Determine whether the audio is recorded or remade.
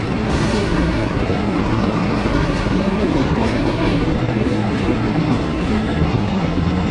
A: remade